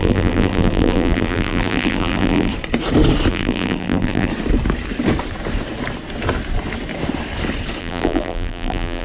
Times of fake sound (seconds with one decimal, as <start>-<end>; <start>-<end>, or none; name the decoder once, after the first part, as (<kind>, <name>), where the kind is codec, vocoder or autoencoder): 0.0-2.5 (vocoder, BigVGAN v2); 3.3-4.3; 7.8-9.0